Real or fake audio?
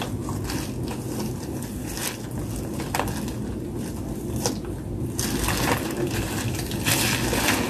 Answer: real